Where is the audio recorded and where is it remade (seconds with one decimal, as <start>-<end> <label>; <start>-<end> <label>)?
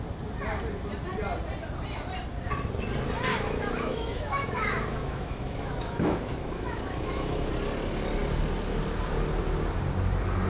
0.0-3.3 recorded; 3.3-7.5 remade; 7.5-10.5 recorded